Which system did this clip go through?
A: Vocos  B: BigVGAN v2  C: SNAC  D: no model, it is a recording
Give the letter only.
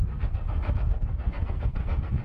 C